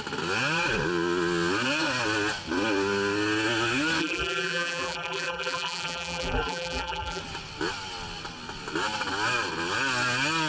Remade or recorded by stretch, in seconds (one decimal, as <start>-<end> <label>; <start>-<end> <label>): 0.0-4.0 recorded; 4.0-7.2 remade; 7.2-10.5 recorded